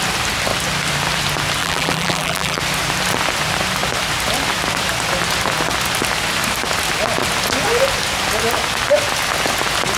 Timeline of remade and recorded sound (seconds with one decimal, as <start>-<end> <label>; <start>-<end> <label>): 0.0-1.6 recorded; 1.6-2.6 remade; 2.6-10.0 recorded